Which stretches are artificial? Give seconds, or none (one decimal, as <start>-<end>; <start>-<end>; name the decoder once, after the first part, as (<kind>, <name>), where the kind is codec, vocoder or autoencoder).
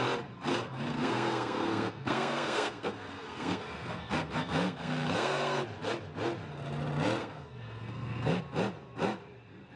0.5-5.6 (codec, SNAC); 7.2-8.4